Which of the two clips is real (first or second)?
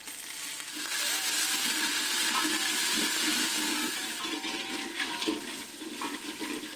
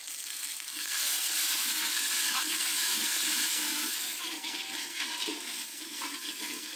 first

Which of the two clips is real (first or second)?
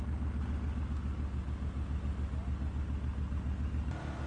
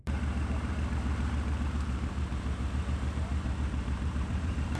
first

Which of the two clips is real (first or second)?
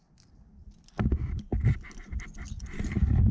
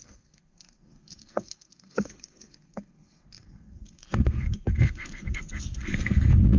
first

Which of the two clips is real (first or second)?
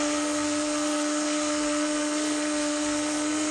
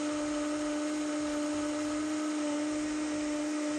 second